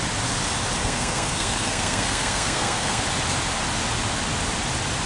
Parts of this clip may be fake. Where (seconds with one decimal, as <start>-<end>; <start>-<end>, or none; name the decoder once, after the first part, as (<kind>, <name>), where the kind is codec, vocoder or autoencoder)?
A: 0.8-3.0 (codec, SNAC)